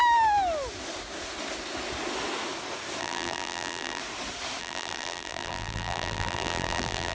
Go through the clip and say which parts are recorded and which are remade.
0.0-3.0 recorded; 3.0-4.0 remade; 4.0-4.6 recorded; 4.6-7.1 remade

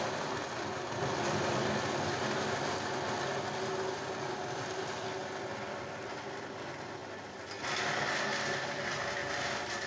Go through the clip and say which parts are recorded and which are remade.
0.0-9.9 recorded

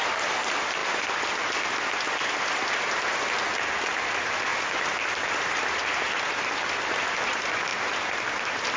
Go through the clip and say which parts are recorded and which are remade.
0.0-8.8 recorded

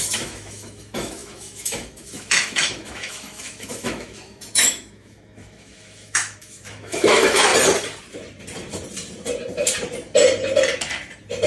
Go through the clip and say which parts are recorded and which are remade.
0.0-7.5 remade; 7.5-11.5 recorded

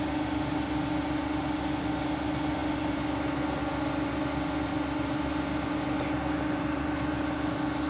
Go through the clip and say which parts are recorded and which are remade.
0.0-7.9 recorded

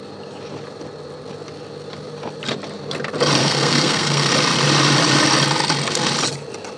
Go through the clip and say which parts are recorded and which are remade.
0.0-3.4 recorded; 3.4-4.3 remade; 4.3-6.8 recorded